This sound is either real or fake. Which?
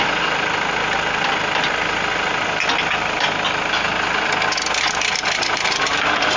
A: real